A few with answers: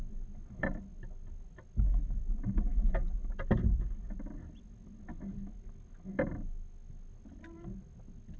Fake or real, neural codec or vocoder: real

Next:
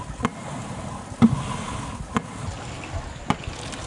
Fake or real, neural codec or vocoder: real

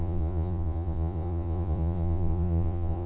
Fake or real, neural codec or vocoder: fake, vocoder, Vocos